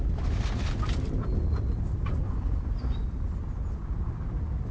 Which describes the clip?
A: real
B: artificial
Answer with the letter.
A